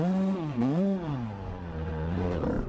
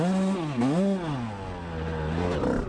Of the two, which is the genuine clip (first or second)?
second